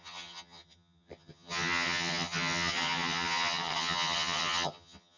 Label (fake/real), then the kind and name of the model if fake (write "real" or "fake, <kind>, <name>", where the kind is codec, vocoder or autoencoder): fake, vocoder, HiFi-GAN